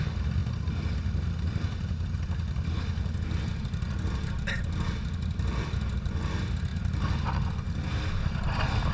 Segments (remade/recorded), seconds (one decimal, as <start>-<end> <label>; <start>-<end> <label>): 0.0-6.7 recorded; 6.7-7.3 remade; 7.3-8.9 recorded